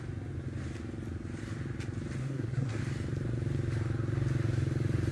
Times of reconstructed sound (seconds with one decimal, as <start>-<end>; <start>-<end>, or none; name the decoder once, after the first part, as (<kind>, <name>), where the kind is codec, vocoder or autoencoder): 2.2-2.8 (codec, SNAC)